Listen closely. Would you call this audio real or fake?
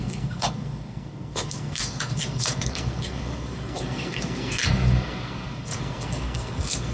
fake